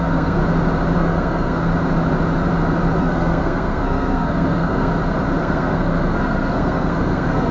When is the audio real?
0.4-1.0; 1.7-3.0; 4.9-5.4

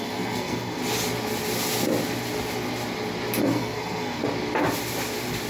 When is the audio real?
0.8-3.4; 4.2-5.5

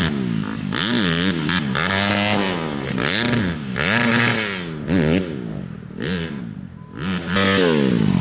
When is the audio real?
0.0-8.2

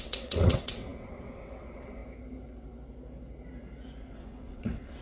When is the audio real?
2.0-4.0

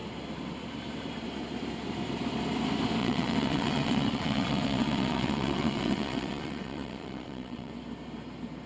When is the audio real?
0.0-3.0; 7.7-8.7

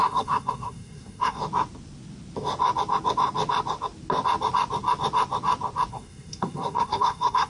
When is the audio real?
1.4-5.9